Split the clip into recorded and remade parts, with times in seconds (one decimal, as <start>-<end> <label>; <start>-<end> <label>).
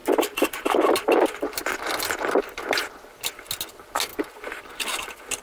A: 0.0-5.4 recorded